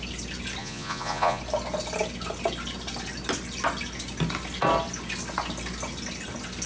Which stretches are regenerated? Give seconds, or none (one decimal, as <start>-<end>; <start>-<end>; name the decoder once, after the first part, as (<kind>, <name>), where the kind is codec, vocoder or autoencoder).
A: 0.6-1.4 (vocoder, Vocos)